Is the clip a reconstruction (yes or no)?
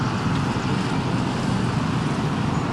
no